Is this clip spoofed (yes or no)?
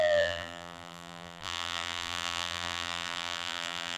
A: yes